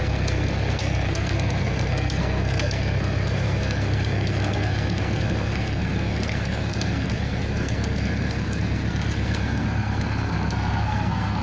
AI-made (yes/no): yes